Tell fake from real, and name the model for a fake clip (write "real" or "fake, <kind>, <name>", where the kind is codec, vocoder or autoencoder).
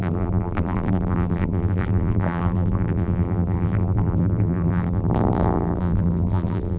fake, vocoder, BigVGAN v2